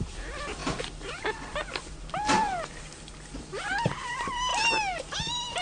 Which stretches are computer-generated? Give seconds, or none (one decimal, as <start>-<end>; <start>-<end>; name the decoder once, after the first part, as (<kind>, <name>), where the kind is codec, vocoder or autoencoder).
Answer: 0.0-5.6 (vocoder, BigVGAN v2)